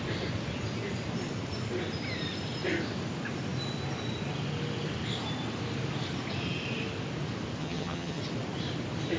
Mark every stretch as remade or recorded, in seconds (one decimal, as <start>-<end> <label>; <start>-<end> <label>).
0.0-7.6 recorded; 7.6-8.2 remade; 8.2-9.2 recorded